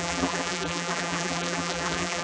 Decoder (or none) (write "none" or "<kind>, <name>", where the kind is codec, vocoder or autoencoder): vocoder, BigVGAN v2